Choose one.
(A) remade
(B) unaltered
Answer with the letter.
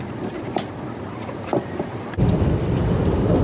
A